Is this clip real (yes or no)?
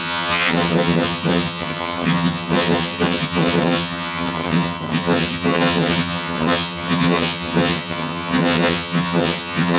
no